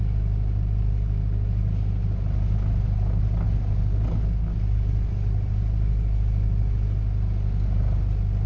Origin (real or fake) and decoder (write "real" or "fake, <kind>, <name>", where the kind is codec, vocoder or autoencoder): real